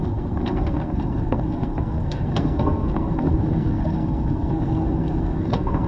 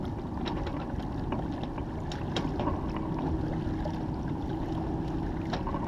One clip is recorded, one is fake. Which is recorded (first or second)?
second